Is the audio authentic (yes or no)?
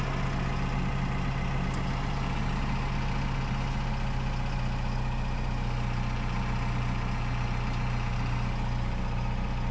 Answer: yes